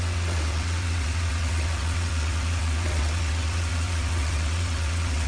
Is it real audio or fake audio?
fake